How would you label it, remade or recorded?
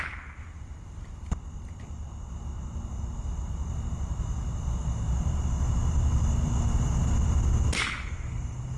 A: recorded